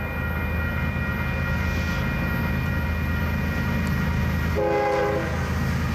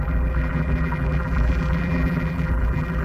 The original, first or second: first